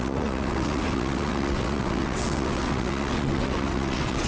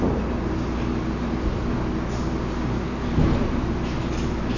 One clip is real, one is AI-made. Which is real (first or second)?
second